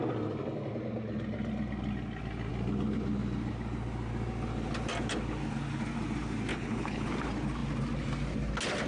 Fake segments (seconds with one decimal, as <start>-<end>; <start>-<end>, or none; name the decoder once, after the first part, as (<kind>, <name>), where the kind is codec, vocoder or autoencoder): 6.5-7.1 (codec, HILCodec)